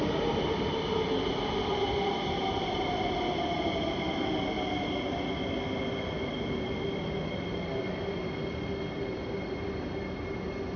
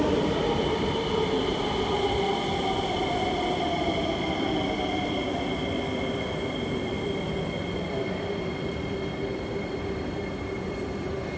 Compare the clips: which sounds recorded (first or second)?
first